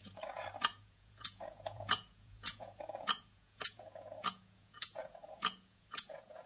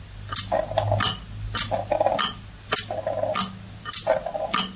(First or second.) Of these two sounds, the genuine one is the second